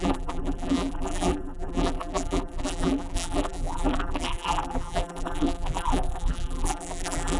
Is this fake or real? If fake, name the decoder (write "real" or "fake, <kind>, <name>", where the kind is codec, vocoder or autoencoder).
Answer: fake, vocoder, BigVGAN v2